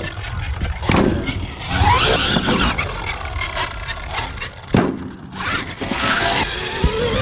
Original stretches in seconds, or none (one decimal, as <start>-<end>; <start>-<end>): 0.0-5.8; 6.4-7.2